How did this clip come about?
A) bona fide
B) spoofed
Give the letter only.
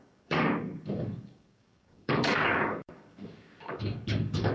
B